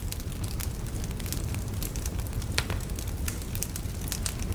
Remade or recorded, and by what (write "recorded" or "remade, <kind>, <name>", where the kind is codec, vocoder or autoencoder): recorded